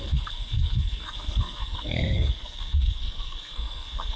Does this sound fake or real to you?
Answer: fake